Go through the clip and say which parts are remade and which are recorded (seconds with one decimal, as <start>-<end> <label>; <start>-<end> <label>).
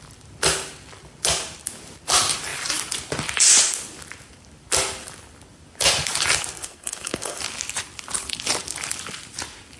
0.0-6.5 recorded; 6.5-7.4 remade; 7.4-9.8 recorded